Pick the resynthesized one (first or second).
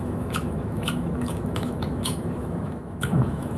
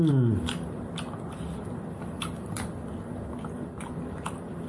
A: first